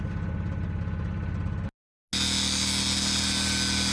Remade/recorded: recorded